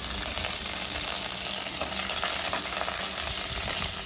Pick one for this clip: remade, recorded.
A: recorded